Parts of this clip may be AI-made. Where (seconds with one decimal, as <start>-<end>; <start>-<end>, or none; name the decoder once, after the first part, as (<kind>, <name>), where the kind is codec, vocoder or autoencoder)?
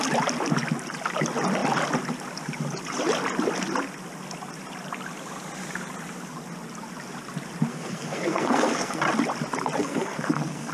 7.7-9.0 (codec, SNAC); 9.8-10.7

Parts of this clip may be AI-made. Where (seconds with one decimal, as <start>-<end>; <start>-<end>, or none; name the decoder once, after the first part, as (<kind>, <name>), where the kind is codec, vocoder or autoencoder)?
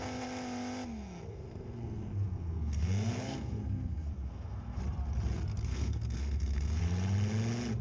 1.3-4.8 (codec, SNAC); 5.7-6.8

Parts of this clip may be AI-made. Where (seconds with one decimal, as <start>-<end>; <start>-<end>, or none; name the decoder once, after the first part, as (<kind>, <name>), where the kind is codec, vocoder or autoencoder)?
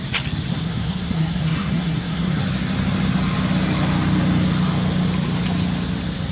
0.5-2.4 (codec, SNAC)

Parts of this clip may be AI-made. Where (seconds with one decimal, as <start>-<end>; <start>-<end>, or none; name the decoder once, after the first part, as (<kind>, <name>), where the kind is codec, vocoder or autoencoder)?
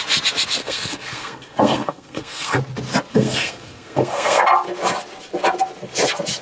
0.6-2.6 (codec, SNAC); 3.1-4.4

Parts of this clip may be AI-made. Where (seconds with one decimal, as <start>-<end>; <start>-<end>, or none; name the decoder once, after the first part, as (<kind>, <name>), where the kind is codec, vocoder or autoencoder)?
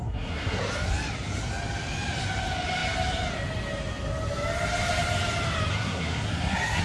0.0-0.6 (codec, SNAC); 5.7-6.8